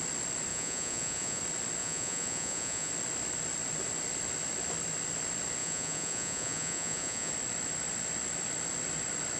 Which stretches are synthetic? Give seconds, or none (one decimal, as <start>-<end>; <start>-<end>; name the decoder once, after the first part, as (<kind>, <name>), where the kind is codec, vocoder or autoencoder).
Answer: 0.5-1.4 (vocoder, Vocos); 1.8-2.9; 5.6-7.3